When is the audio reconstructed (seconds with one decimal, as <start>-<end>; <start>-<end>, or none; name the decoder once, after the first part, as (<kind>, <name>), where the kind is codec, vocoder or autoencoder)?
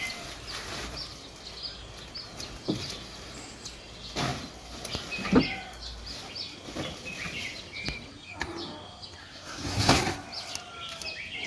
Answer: 9.2-10.0 (codec, SNAC)